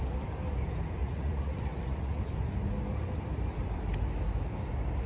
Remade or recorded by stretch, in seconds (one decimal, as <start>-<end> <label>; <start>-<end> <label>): 0.0-1.0 recorded; 1.0-2.2 remade; 2.2-5.1 recorded